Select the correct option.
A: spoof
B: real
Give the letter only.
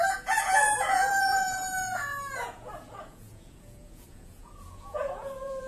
A